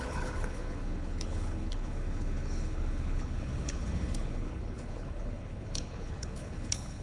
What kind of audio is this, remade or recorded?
remade